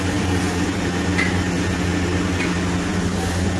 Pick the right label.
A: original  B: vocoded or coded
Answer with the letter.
A